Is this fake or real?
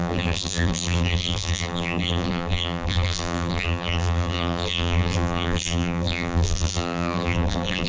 fake